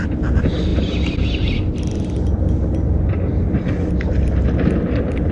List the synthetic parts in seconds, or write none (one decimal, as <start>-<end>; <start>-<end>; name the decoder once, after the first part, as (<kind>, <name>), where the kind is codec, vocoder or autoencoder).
none